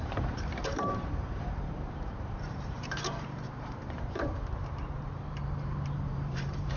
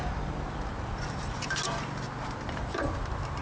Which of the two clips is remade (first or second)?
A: first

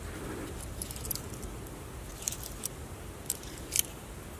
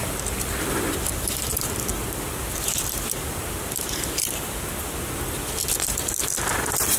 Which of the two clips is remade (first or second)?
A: second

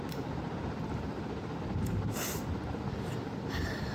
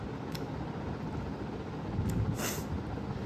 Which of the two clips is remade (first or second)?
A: first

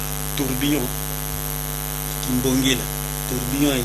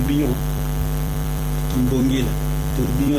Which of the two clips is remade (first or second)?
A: second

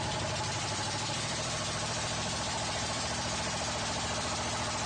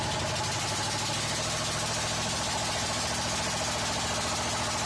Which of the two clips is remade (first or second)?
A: first